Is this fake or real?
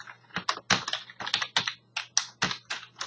real